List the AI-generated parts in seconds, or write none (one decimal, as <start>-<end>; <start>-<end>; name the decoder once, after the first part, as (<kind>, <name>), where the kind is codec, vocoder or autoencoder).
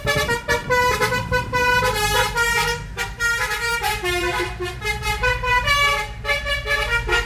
0.6-1.8 (vocoder, BigVGAN v2); 3.7-5.7